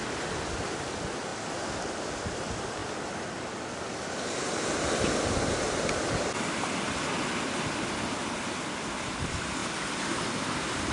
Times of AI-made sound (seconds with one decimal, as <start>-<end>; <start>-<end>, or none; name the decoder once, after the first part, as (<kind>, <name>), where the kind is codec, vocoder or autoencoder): none